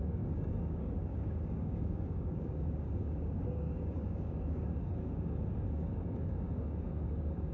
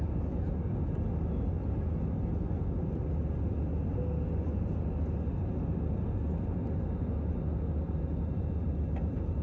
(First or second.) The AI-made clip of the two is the first